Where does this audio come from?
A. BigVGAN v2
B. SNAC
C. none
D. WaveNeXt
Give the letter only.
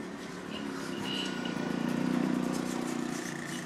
C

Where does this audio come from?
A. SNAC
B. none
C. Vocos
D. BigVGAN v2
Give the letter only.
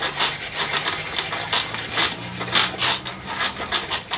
B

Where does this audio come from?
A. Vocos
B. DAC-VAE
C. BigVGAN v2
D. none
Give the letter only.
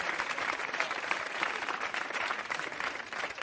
C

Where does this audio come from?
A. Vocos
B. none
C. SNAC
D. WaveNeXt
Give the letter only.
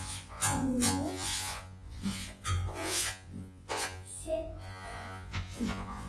A